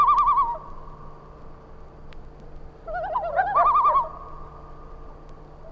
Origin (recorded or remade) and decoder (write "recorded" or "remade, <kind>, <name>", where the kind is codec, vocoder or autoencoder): recorded